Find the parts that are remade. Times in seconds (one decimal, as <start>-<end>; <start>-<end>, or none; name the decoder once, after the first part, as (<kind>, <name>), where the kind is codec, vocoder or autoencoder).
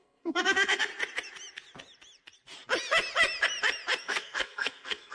0.0-0.9 (codec, SNAC); 4.0-5.1